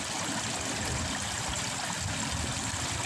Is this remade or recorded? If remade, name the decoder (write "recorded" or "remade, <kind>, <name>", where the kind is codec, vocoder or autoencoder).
remade, vocoder, BigVGAN v2